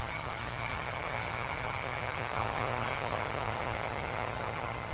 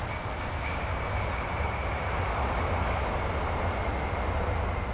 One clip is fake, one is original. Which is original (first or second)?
second